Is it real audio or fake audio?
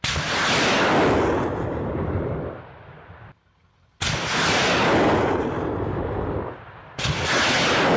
real